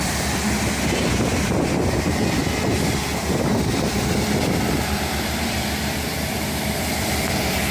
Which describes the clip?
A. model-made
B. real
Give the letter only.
A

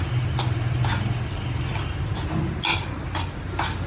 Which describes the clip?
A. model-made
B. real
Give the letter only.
B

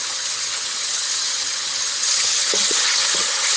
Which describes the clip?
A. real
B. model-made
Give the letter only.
B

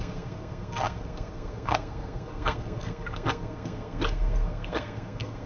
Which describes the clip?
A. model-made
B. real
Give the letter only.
A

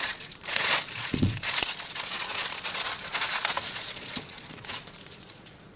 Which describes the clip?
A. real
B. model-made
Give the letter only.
B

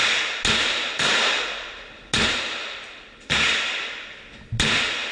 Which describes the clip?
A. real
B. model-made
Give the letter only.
A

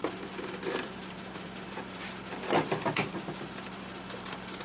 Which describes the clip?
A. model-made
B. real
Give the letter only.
A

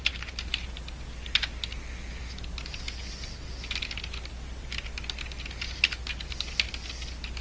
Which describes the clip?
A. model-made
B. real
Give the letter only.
B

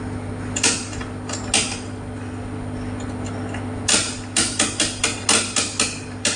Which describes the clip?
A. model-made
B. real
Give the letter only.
B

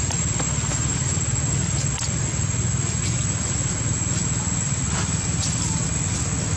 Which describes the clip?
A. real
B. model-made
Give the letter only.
A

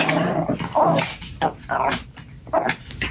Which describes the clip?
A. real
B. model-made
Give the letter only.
B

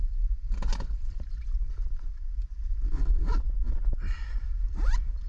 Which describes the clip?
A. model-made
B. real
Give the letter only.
B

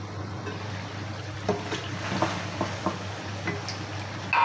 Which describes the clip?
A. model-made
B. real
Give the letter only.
B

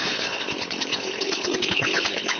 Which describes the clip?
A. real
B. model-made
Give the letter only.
B